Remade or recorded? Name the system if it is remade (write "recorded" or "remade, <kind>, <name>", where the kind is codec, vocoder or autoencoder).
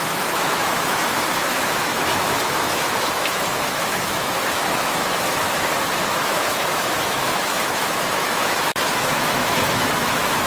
remade, autoencoder, DAC-VAE